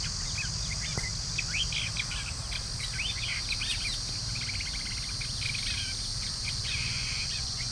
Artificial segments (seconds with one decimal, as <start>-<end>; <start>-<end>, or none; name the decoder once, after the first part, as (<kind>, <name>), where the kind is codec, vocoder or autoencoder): 6.1-7.7 (vocoder, Vocos)